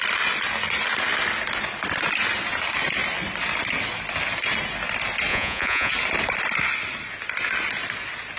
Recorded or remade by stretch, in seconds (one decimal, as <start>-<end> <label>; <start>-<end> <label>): 0.0-5.3 recorded; 5.3-5.9 remade; 5.9-8.4 recorded